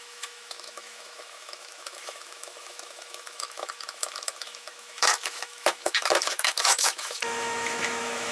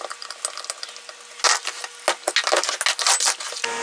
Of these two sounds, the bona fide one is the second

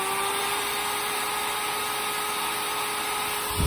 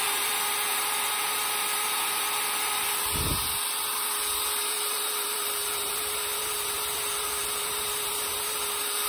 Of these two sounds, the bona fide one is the first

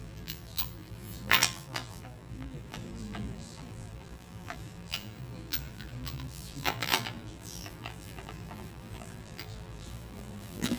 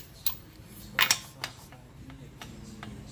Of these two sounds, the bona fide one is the second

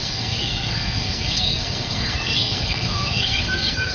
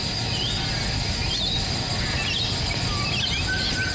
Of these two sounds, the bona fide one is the second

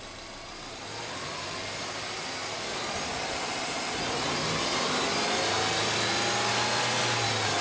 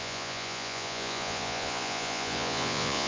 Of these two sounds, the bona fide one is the first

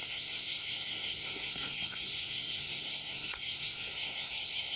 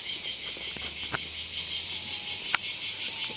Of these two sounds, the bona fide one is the second